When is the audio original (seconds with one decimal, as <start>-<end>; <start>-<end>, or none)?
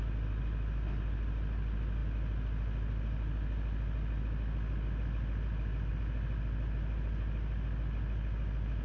0.0-8.8